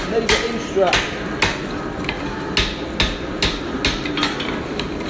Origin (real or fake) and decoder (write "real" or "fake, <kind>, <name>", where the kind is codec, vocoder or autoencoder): real